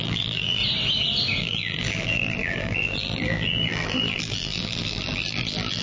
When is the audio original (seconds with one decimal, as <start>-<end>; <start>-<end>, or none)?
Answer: 0.6-1.4